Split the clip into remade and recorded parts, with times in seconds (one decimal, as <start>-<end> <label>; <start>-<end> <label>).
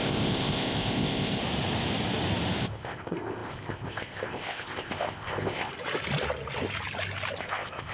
0.0-1.4 remade; 1.4-2.6 recorded; 2.6-5.7 remade; 5.7-7.4 recorded; 7.4-7.9 remade